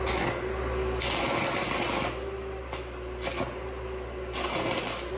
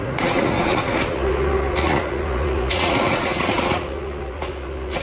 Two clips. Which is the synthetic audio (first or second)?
second